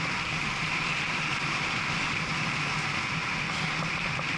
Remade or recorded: recorded